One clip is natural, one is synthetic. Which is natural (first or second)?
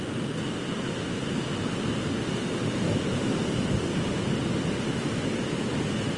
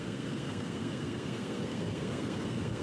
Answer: first